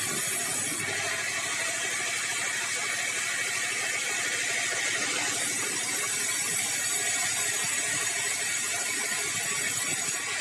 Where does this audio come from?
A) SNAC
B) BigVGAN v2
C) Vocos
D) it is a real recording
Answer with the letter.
D